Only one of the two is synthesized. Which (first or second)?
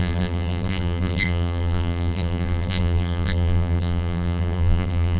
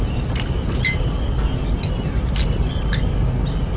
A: first